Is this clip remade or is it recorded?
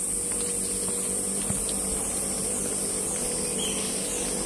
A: recorded